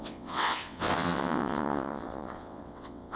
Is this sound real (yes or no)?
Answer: no